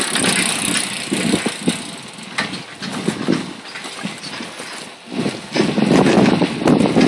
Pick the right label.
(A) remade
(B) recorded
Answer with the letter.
B